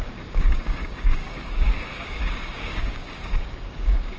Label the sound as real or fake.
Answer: fake